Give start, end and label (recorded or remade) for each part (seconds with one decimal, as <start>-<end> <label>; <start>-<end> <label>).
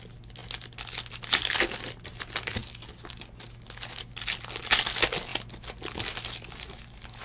0.0-7.2 recorded